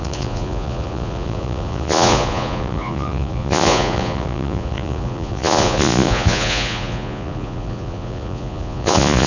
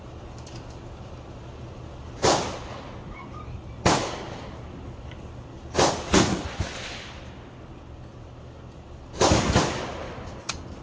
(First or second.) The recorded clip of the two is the second